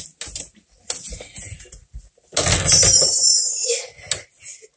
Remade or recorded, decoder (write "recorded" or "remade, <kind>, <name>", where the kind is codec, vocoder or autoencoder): recorded